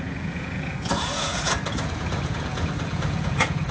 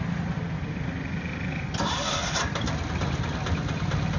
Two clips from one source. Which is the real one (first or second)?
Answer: second